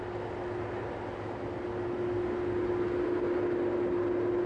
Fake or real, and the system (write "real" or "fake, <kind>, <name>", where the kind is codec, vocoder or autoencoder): real